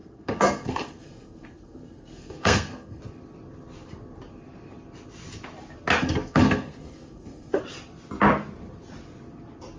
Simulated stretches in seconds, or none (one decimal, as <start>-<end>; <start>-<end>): 0.0-3.0; 6.0-7.6